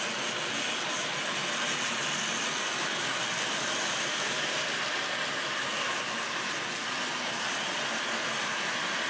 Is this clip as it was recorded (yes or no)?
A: yes